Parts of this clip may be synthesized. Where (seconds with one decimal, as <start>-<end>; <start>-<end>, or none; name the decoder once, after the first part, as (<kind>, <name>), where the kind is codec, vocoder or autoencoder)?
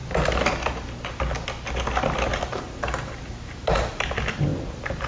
2.3-4.1 (vocoder, BigVGAN v2); 4.5-5.1